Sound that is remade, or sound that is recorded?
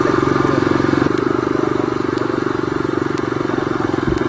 recorded